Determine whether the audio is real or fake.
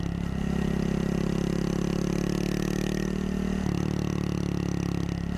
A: real